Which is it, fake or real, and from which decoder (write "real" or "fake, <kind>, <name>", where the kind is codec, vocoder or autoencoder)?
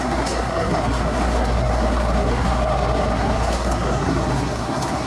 fake, codec, SNAC